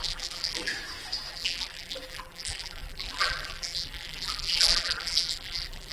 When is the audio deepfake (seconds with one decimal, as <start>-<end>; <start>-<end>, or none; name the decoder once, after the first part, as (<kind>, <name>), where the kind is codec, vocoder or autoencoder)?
0.0-0.7 (vocoder, BigVGAN v2); 1.3-5.9